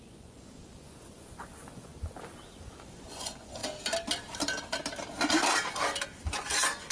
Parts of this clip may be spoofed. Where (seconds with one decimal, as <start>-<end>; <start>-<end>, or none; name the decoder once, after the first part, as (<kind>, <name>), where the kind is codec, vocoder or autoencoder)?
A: 0.0-1.9 (vocoder, Vocos); 2.6-3.6; 6.2-6.9